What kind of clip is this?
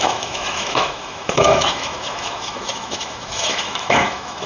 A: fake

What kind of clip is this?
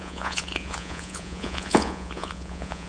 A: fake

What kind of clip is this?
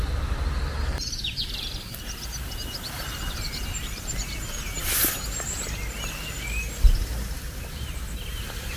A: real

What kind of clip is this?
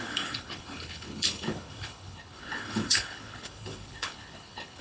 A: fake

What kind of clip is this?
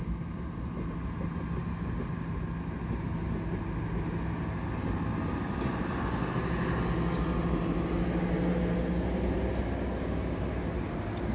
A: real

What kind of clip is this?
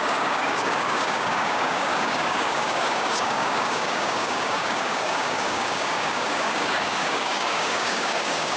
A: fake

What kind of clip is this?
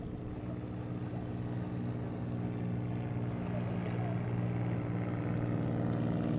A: real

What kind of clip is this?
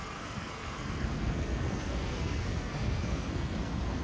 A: fake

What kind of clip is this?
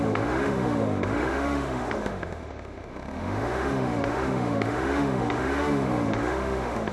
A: fake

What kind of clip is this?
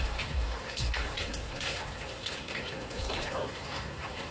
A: fake